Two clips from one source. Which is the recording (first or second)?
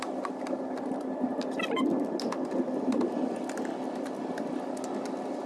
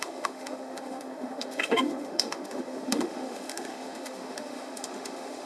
first